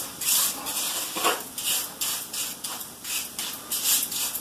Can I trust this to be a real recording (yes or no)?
yes